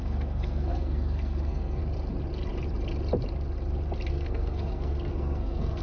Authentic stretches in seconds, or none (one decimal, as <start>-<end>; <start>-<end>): 1.8-4.1